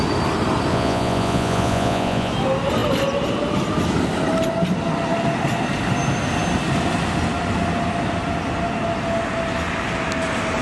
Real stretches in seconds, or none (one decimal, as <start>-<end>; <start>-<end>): 0.0-0.7; 2.3-10.6